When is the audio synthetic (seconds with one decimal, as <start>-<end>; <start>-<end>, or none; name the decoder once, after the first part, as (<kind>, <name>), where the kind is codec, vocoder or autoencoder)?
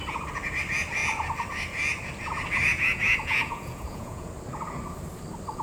2.7-4.3 (vocoder, Vocos)